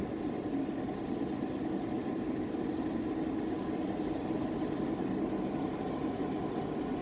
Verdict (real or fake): real